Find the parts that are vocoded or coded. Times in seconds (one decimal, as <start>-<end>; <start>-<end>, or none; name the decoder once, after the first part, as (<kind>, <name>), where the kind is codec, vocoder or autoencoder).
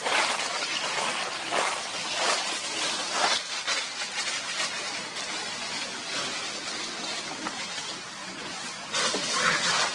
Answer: 5.4-6.1 (vocoder, Vocos); 8.2-9.0